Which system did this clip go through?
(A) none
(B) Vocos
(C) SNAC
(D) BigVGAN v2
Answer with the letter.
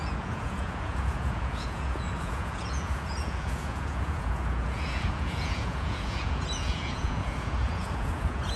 B